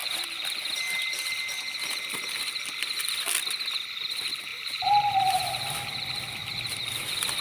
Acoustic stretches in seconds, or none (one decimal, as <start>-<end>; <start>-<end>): 1.3-4.5; 5.7-6.4